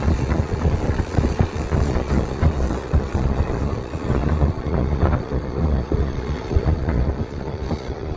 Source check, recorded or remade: remade